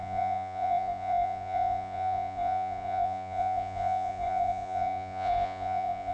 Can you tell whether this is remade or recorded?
remade